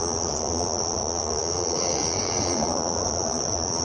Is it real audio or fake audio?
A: fake